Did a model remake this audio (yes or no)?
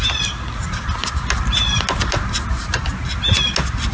no